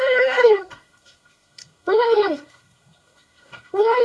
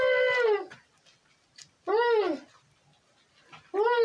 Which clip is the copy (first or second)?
first